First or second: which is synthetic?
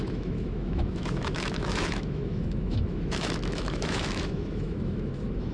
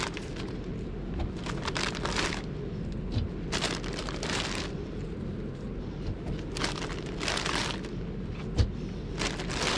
first